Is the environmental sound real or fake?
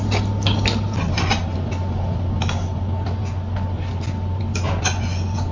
real